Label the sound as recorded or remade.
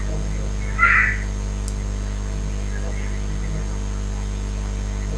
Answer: recorded